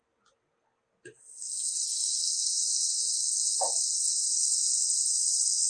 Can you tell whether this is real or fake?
real